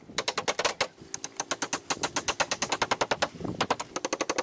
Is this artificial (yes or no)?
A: no